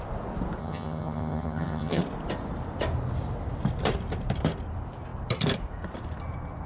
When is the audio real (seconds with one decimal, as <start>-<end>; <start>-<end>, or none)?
0.0-0.6; 2.0-6.7